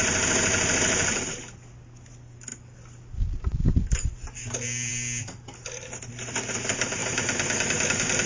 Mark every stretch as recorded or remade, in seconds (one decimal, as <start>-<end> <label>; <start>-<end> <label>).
0.0-8.3 recorded